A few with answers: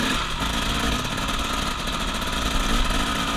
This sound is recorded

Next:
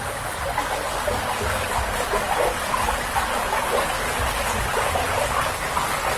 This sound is recorded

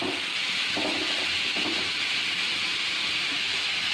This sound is recorded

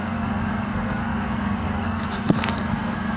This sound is remade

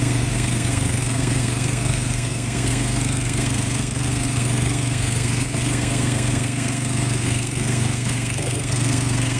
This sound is remade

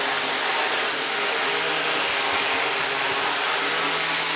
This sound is recorded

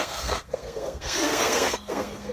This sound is remade